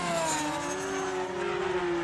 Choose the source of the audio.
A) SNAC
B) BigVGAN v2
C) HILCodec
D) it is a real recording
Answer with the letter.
D